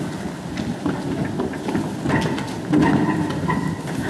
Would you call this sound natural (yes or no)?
yes